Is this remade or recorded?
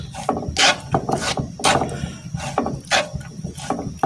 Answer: recorded